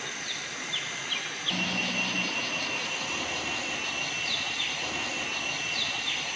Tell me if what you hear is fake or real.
real